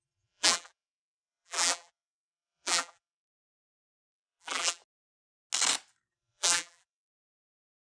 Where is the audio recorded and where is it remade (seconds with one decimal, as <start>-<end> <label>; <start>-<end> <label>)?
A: 0.0-4.8 remade; 4.8-6.1 recorded; 6.1-7.9 remade